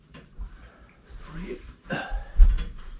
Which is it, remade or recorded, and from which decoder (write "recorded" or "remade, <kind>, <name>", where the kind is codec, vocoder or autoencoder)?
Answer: remade, vocoder, BigVGAN v2